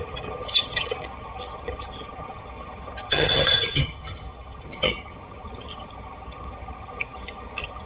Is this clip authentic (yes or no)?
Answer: no